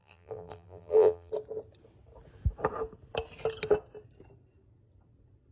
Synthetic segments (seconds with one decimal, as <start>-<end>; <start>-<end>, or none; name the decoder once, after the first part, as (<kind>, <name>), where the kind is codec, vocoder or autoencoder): 0.0-1.3 (vocoder, BigVGAN v2)